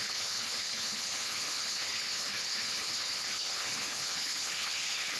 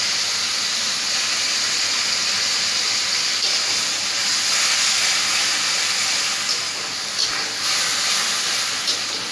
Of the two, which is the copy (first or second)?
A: first